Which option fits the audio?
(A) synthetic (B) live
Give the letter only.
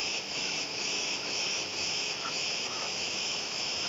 A